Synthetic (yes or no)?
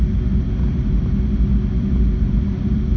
no